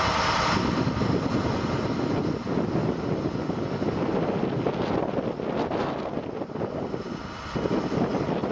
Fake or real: real